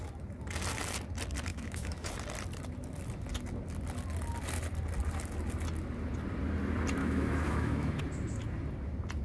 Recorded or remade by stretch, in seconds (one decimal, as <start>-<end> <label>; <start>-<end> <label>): 0.0-1.5 recorded; 1.5-2.1 remade; 2.1-7.0 recorded; 7.0-8.0 remade; 8.0-9.2 recorded